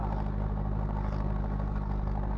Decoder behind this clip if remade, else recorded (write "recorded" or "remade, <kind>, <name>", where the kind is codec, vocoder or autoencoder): recorded